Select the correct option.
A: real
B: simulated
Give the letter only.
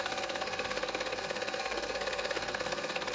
B